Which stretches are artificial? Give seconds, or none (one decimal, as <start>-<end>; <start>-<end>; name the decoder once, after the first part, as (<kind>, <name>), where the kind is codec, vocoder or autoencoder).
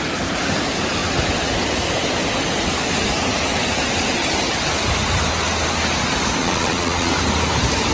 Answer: 6.4-7.1 (vocoder, Vocos)